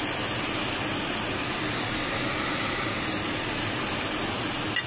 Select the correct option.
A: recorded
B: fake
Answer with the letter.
A